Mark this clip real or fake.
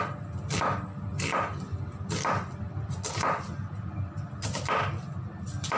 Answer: real